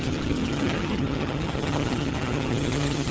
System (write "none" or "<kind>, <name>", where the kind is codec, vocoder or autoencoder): vocoder, HiFi-GAN